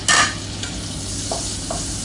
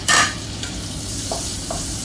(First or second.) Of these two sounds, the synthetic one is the second